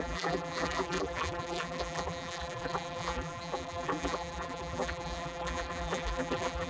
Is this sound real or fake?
fake